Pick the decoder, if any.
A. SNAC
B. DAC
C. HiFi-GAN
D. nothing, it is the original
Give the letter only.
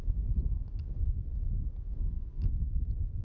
D